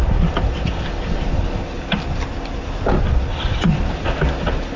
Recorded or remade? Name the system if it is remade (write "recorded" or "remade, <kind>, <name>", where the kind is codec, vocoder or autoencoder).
recorded